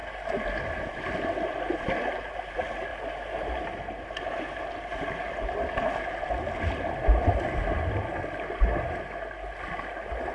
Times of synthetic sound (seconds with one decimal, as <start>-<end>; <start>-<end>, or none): none